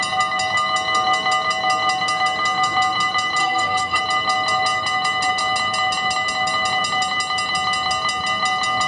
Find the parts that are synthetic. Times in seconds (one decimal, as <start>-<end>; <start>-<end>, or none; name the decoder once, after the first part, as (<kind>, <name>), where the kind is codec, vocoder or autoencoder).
3.4-4.0 (codec, SNAC)